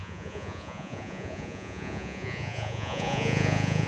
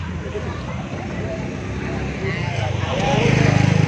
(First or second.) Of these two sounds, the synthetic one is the first